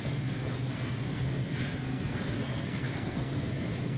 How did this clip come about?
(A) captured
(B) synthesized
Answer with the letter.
B